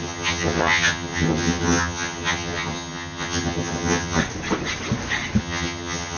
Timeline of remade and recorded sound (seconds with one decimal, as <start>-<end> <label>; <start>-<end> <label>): 0.0-4.2 remade; 4.2-5.4 recorded; 5.4-6.2 remade